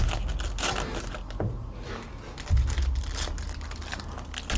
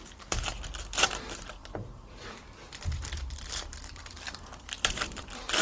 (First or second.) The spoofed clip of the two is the second